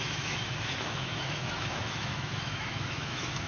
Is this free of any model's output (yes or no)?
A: no